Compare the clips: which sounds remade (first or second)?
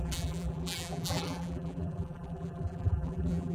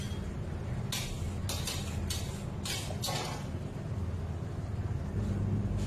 first